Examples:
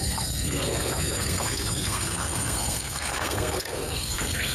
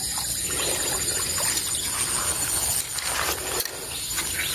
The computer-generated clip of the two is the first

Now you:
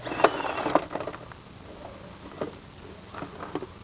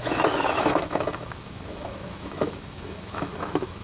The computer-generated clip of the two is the second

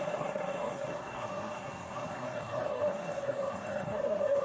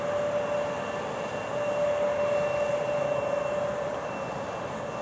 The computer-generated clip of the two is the first